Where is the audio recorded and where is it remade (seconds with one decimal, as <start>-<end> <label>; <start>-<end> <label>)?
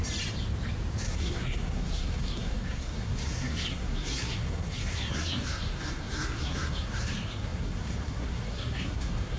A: 0.0-1.0 recorded; 1.0-9.4 remade